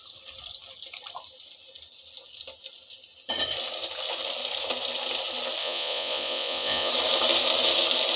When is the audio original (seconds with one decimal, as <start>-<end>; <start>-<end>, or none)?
0.0-5.6; 6.9-8.2